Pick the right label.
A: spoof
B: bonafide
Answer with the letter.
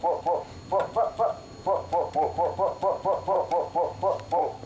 B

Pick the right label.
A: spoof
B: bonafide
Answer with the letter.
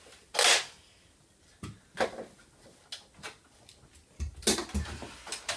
B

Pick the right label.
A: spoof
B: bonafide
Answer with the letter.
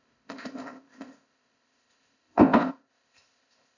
A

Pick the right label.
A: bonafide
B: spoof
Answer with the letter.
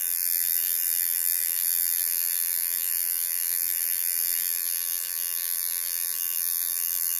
B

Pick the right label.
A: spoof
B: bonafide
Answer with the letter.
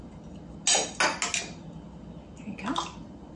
B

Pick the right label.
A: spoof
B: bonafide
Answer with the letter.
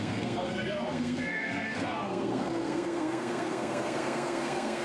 A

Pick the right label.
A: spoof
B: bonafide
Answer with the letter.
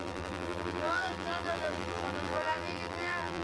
A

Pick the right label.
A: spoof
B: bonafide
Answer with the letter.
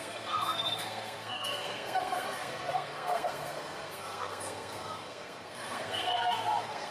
A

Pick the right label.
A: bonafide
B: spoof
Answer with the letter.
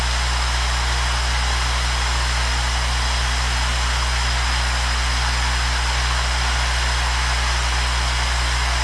A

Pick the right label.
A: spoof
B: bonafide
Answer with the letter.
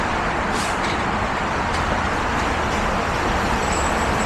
A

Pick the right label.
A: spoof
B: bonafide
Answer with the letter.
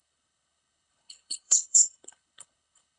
A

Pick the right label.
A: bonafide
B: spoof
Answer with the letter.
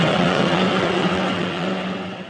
B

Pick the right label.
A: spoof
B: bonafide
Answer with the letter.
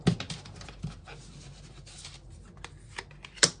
B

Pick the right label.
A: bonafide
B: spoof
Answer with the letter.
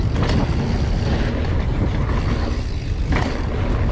A